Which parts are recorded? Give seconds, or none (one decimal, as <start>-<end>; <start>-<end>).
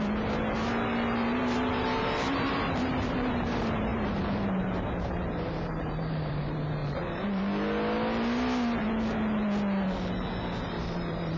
6.8-10.8